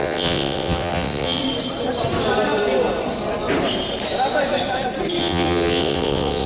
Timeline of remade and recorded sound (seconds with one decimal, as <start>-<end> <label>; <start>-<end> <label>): 0.0-1.4 remade; 1.4-5.2 recorded; 5.2-6.5 remade